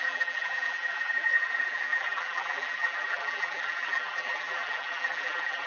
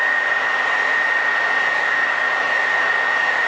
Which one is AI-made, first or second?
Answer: first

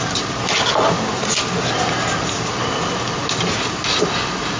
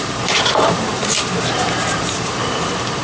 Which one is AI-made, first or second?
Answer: second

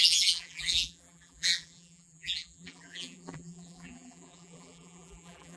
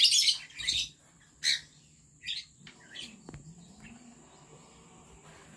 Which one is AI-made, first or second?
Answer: first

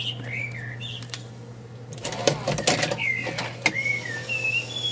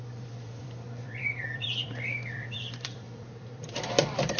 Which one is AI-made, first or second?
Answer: second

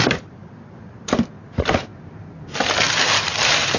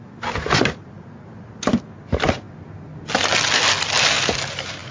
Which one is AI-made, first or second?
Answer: first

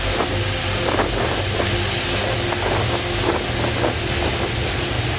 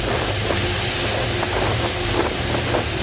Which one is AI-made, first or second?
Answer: second